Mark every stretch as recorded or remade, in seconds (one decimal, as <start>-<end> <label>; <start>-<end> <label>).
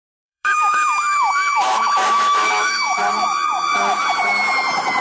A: 0.0-3.0 remade; 3.0-5.0 recorded